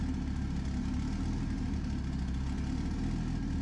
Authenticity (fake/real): real